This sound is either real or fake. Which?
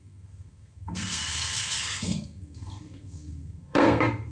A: fake